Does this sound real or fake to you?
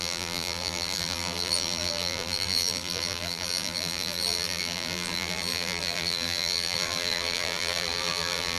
fake